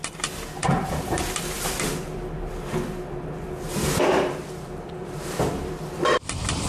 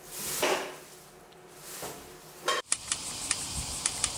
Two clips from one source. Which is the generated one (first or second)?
first